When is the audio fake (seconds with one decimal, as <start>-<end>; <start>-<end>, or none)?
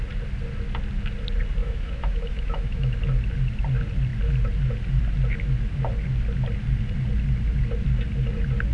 1.6-3.0